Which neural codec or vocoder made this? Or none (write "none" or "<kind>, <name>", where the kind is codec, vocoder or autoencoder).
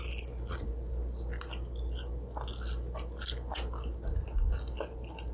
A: none